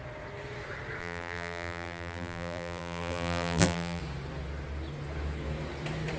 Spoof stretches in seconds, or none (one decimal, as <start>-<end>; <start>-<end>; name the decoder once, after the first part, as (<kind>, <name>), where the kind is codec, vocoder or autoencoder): 1.0-4.0 (vocoder, BigVGAN v2)